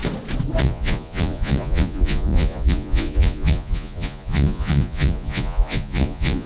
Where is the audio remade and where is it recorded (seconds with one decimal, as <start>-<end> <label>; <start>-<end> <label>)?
0.0-0.6 recorded; 0.6-6.5 remade